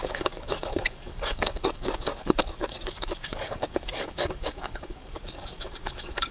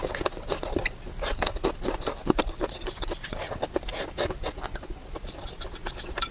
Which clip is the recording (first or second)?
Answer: second